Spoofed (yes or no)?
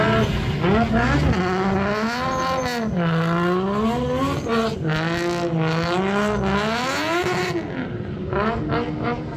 no